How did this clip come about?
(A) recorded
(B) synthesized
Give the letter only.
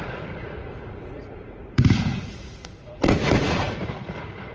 B